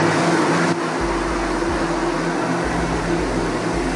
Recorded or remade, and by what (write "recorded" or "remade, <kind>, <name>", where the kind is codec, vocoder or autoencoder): recorded